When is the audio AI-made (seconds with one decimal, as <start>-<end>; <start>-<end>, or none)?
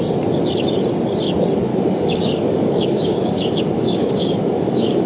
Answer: 1.7-5.1